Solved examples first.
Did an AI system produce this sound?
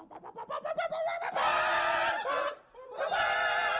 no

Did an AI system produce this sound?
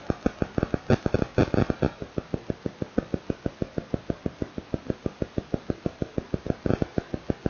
no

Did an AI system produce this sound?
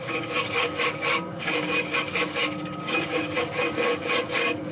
yes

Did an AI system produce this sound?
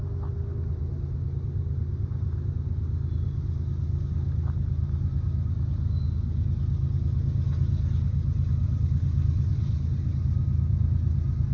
no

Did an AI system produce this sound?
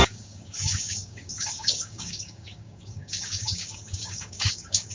yes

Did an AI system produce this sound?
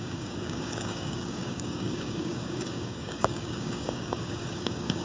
yes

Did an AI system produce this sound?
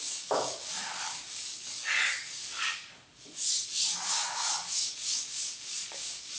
yes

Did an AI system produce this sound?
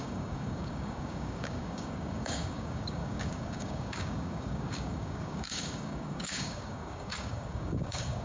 yes